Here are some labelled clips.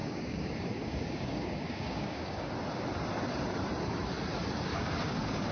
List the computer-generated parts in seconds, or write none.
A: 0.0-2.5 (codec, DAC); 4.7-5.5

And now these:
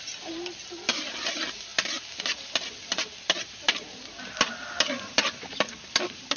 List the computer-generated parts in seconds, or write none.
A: none